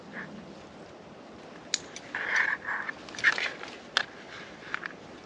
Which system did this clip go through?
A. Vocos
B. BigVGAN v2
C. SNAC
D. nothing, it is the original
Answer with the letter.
D